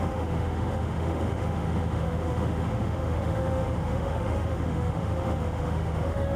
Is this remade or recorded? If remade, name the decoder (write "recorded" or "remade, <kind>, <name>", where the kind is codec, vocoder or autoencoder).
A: remade, autoencoder, DAC-VAE